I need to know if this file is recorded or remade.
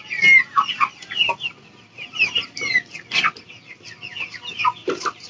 recorded